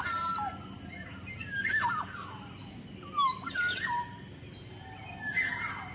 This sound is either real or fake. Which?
real